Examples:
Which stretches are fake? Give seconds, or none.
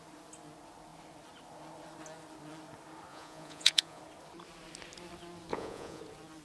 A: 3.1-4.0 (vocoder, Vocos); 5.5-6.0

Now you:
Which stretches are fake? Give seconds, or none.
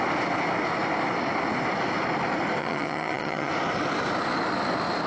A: 2.6-3.5 (vocoder, HiFi-GAN)